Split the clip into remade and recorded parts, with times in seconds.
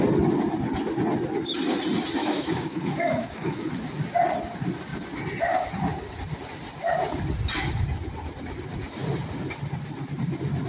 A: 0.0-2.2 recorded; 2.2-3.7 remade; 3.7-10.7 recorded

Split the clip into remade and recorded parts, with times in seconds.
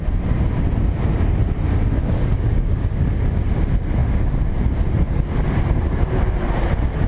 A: 0.0-2.0 recorded; 2.0-3.3 remade; 3.3-7.1 recorded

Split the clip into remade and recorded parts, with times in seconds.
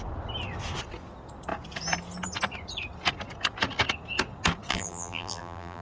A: 0.0-4.7 recorded; 4.7-5.8 remade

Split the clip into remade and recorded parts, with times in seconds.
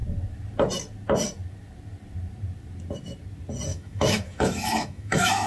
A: 0.0-3.7 recorded; 3.7-5.5 remade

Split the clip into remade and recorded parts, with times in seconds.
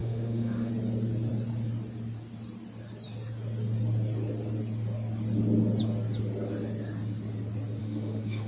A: 0.0-0.7 remade; 0.7-7.8 recorded; 7.8-8.5 remade